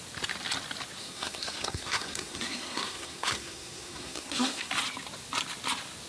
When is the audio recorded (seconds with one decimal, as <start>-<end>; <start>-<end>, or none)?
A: 0.0-1.0; 4.7-6.1